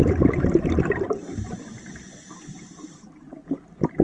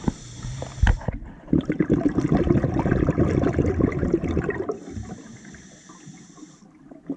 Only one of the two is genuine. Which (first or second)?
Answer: second